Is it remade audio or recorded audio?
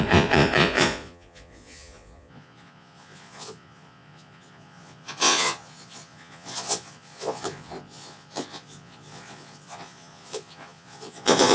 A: remade